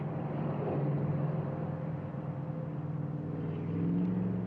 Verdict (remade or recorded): recorded